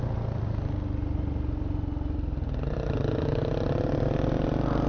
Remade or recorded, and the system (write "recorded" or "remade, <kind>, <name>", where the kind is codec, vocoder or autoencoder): recorded